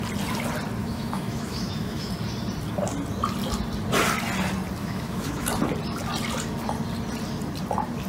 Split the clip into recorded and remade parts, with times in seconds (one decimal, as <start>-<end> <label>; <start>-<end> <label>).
0.0-0.8 recorded; 0.8-2.1 remade; 2.1-4.8 recorded; 4.8-5.5 remade; 5.5-8.1 recorded